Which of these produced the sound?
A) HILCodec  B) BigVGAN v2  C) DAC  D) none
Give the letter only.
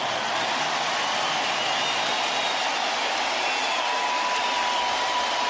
D